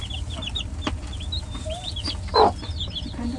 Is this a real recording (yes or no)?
yes